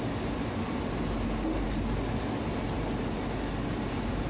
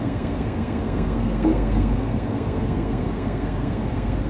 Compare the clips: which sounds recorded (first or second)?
first